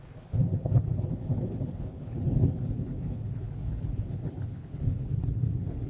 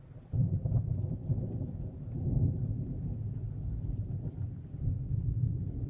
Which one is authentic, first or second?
second